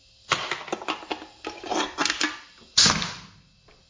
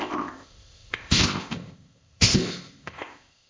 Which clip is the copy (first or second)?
second